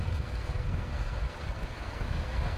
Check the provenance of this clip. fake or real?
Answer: fake